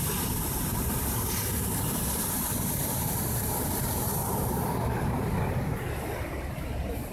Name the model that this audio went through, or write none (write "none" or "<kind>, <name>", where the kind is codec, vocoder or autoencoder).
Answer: none